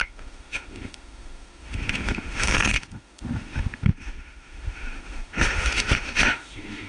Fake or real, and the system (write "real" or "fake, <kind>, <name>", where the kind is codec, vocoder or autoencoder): fake, autoencoder, DAC-VAE